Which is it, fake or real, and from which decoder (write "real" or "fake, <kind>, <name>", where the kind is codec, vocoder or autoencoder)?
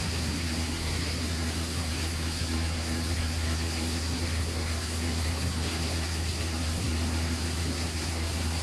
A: fake, codec, SNAC